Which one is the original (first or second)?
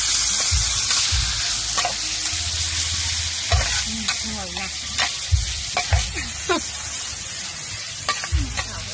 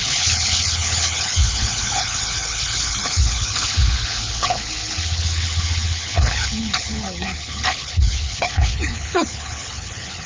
first